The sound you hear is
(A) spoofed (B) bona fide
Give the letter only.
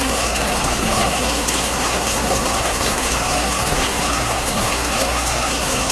A